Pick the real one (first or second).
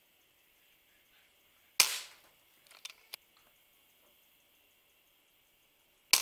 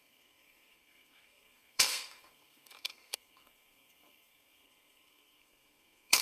first